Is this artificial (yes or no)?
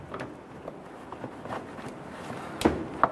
no